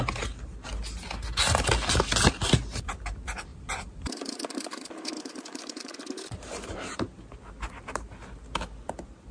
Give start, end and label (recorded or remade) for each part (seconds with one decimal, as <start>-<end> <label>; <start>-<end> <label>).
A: 0.0-3.5 recorded; 3.5-6.0 remade; 6.0-9.3 recorded